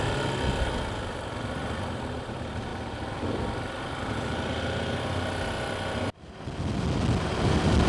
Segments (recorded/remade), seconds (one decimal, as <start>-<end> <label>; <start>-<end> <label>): 0.0-7.9 recorded